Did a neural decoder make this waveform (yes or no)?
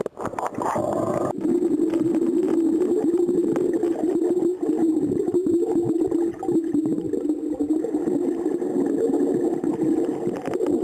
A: no